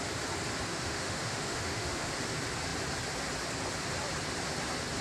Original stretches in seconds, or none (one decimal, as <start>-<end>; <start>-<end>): 0.0-0.7; 2.1-5.0